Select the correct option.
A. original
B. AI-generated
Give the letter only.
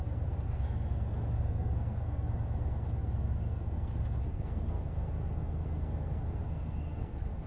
B